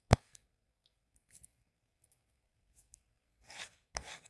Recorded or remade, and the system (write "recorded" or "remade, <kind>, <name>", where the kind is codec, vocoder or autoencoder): remade, codec, SNAC